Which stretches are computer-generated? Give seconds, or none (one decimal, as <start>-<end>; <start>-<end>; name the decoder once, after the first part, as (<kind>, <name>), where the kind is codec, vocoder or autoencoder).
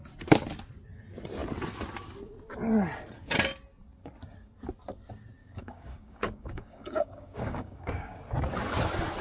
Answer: 5.4-8.2 (codec, DAC)